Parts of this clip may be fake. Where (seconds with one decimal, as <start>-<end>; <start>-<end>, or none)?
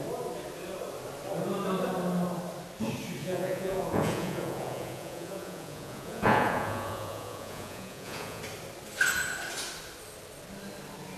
3.2-8.4